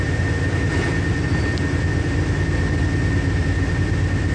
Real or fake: real